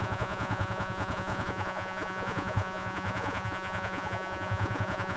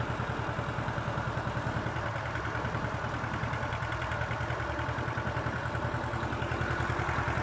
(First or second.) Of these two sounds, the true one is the second